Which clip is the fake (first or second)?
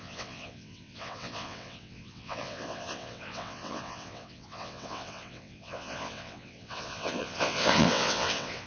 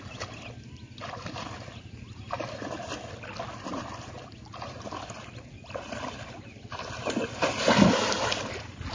first